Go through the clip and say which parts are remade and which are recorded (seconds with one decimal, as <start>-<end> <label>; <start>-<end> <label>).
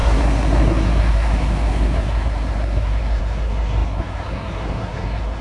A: 0.0-5.4 remade